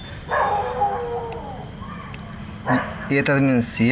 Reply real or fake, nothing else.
real